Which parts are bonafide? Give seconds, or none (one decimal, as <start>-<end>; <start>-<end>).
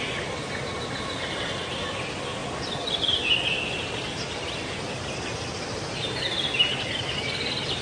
0.0-7.8